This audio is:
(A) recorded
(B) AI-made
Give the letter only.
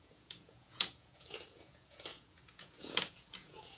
B